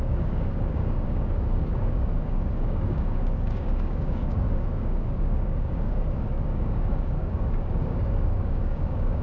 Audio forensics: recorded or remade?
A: remade